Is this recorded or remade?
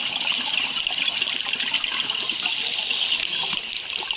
recorded